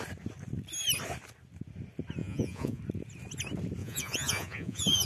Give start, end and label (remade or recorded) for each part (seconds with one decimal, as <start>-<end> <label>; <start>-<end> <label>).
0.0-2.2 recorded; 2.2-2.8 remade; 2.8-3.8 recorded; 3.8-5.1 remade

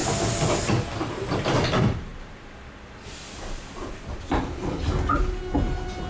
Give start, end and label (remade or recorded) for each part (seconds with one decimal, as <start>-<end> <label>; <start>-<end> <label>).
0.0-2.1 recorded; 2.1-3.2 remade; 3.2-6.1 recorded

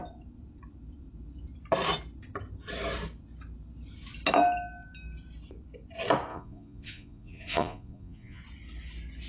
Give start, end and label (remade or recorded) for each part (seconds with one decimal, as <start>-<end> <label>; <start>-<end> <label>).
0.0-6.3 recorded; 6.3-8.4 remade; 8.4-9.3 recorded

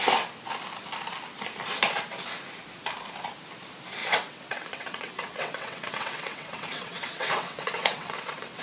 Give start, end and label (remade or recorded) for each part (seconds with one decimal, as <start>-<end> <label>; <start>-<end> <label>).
0.0-4.0 recorded; 4.0-8.6 remade

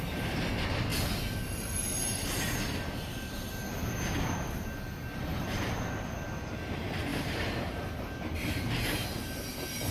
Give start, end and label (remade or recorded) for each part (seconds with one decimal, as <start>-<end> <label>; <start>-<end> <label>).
0.0-0.9 recorded; 0.9-2.3 remade; 2.3-5.3 recorded; 5.3-6.1 remade; 6.1-7.1 recorded; 7.1-7.9 remade; 7.9-8.3 recorded; 8.3-9.5 remade; 9.5-9.9 recorded